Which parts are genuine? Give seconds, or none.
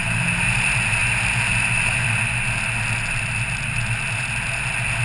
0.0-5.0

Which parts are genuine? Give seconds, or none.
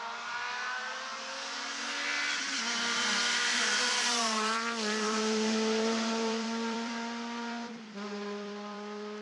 1.1-2.3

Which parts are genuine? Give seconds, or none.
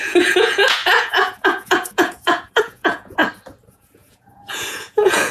3.2-3.7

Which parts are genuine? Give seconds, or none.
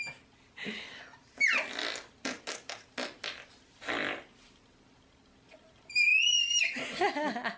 0.0-7.6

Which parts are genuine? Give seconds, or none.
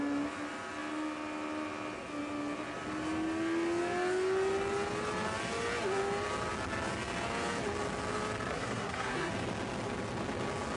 0.0-8.5; 9.3-10.8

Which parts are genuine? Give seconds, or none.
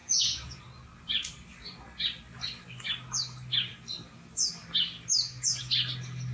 0.6-6.3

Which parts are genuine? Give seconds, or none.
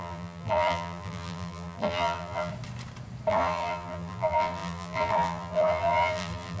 2.5-3.3